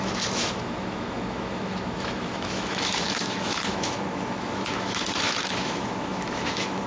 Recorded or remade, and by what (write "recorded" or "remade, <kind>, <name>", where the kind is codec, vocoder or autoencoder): remade, autoencoder, DAC-VAE